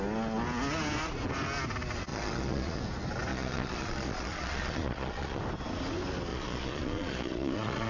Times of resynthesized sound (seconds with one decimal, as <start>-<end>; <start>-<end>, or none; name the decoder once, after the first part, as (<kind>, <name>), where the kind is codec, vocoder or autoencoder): 2.1-2.8 (vocoder, Vocos); 3.3-5.4; 6.3-7.9

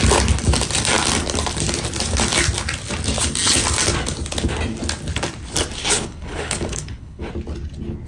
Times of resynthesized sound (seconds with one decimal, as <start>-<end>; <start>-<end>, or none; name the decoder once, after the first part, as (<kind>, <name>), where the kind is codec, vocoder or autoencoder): 5.8-7.3 (codec, HILCodec)

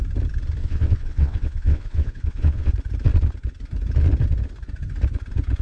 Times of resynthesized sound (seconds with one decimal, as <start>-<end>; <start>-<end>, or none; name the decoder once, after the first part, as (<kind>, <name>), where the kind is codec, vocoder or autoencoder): 0.6-2.7 (vocoder, WaveNeXt)

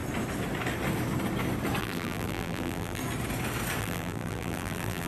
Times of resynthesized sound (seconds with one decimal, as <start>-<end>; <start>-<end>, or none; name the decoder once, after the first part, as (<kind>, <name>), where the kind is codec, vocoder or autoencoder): 1.8-3.0 (vocoder, BigVGAN v2); 3.8-5.1

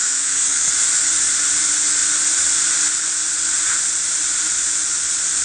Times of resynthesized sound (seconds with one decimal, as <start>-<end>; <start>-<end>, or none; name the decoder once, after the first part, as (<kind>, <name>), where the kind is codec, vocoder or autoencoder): 0.0-0.7 (codec, SNAC)